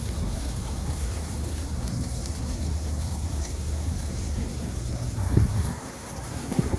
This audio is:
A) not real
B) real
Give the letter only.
A